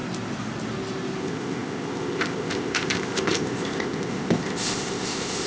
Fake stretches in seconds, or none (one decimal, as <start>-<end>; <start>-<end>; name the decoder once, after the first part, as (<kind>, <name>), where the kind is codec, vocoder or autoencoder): 1.2-5.5 (codec, ZipCodec)